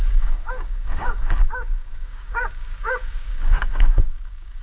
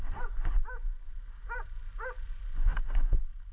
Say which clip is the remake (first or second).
first